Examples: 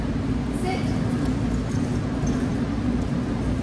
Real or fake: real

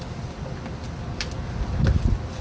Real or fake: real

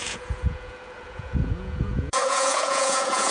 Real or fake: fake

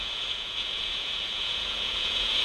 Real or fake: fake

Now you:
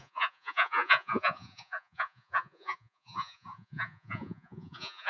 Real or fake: fake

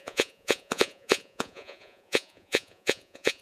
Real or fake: fake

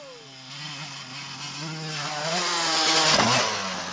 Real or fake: real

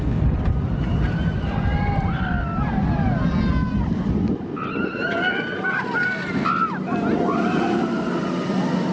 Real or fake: real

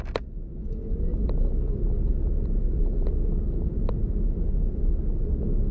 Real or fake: real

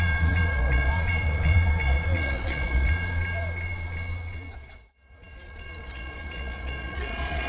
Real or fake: fake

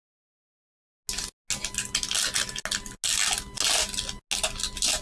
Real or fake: real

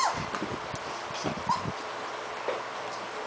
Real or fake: real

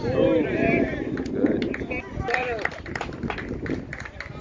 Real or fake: real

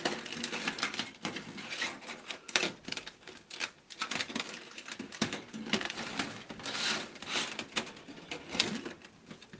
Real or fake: real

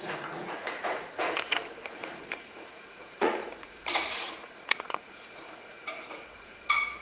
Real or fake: fake